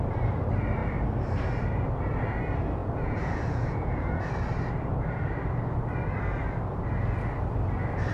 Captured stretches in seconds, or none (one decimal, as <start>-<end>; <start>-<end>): 0.0-2.8; 4.2-8.1